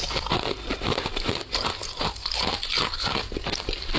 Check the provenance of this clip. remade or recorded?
recorded